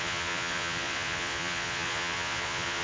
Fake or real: fake